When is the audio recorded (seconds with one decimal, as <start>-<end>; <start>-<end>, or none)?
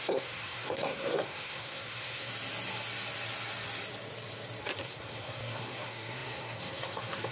2.3-4.8